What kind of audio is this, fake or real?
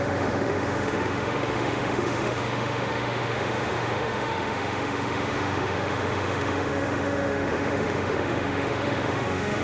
fake